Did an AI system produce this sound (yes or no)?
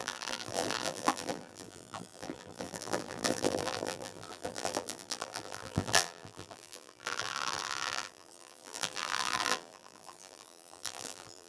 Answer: yes